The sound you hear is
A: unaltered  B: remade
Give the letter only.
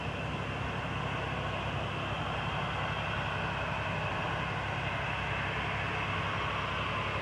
A